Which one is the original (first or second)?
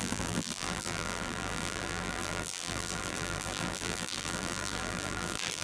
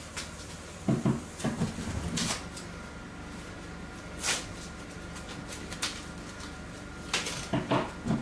second